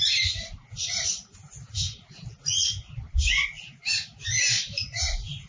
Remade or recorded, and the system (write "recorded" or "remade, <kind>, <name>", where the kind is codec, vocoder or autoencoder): recorded